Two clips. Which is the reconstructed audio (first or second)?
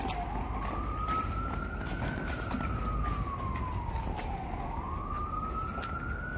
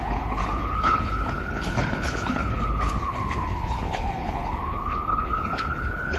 second